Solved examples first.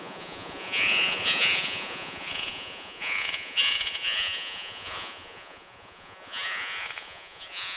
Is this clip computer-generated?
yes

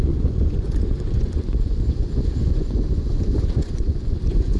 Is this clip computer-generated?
yes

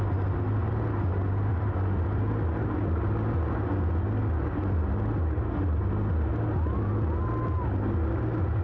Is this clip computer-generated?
no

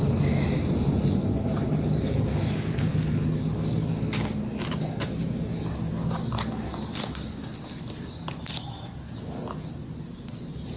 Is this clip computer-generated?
no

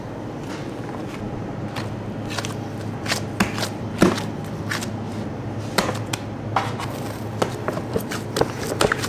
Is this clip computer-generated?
no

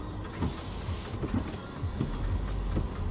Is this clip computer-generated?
no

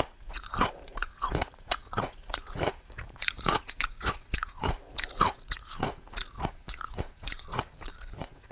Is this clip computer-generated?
yes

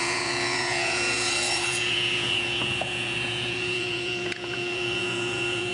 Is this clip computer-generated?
yes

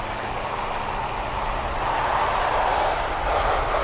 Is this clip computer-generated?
no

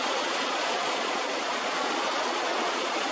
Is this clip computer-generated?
yes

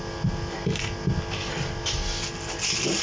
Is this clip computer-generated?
no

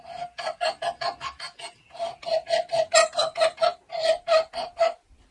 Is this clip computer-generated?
no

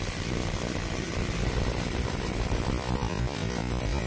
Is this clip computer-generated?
no